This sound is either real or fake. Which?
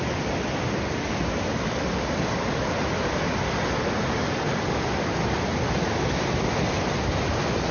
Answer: real